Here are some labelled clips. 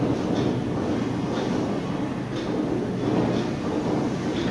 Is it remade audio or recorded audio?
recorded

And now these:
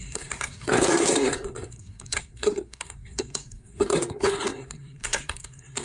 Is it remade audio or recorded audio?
remade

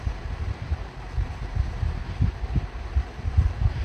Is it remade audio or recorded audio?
remade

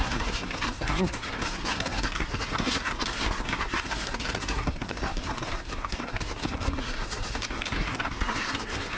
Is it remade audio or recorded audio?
remade